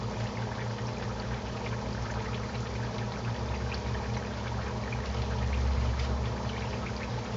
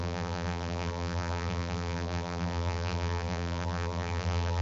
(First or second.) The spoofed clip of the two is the second